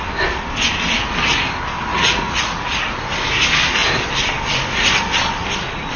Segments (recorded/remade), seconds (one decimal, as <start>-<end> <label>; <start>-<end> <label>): 0.0-1.9 recorded; 1.9-2.9 remade; 2.9-6.0 recorded